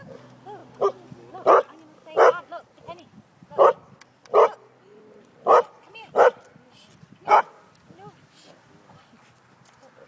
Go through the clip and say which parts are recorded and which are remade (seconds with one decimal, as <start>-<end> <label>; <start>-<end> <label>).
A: 0.0-4.9 recorded; 4.9-6.1 remade; 6.1-10.1 recorded